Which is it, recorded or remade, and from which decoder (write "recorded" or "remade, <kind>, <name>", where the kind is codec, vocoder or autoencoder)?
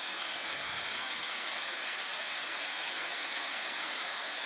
remade, codec, SNAC